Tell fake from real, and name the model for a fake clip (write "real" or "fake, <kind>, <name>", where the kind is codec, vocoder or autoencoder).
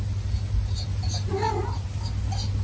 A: real